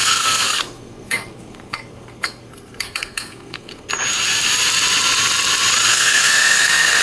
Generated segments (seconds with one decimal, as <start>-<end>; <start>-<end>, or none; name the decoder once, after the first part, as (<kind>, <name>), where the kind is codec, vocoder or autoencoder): 0.0-3.9 (codec, SNAC); 5.9-7.0